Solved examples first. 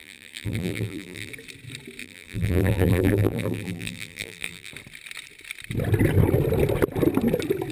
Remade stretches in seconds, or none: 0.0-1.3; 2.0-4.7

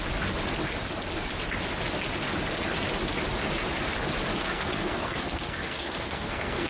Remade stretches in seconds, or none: 4.4-6.7

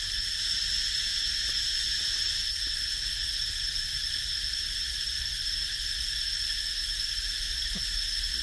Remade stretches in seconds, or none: none

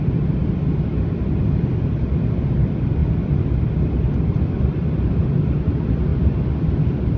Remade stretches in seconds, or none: none

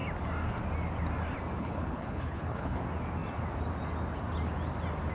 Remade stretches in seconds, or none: 1.6-2.8

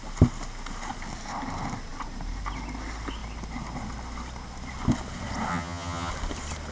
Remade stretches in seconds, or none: 5.5-6.1